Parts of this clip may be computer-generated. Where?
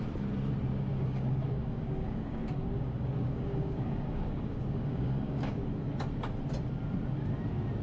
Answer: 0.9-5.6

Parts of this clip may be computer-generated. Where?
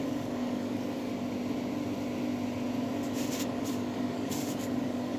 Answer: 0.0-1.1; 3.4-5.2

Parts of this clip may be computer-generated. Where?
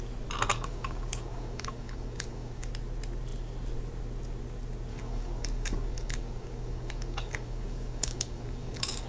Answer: 0.5-2.7; 4.9-9.1